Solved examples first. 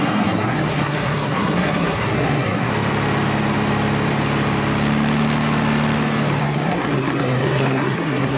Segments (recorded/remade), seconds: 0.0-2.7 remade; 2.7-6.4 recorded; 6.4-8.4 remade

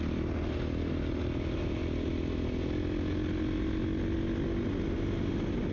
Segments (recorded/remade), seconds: 0.0-5.7 recorded

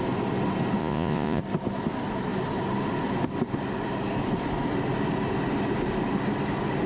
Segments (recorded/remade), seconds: 0.0-0.8 recorded; 0.8-1.4 remade; 1.4-6.9 recorded

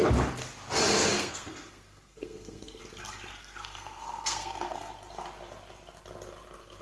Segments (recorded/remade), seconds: 0.0-1.1 recorded; 1.1-2.8 remade; 2.8-3.3 recorded; 3.3-4.9 remade; 4.9-6.8 recorded